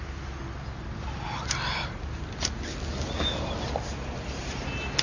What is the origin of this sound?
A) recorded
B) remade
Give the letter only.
A